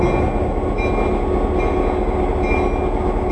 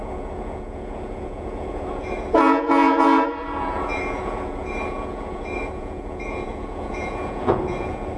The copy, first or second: second